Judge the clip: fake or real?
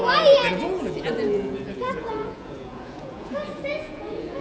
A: fake